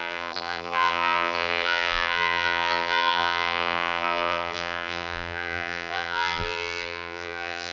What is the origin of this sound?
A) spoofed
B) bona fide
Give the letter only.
A